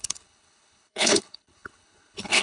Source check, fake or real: fake